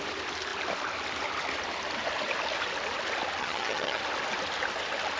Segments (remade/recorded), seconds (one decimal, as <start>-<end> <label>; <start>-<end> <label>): 0.0-3.4 recorded; 3.4-4.0 remade; 4.0-5.2 recorded